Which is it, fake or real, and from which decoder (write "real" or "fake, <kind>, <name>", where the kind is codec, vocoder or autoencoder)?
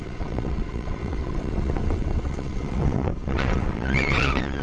fake, vocoder, WaveNeXt